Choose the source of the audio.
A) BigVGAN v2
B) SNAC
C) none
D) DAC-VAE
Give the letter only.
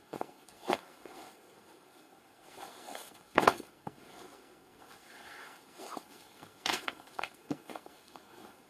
B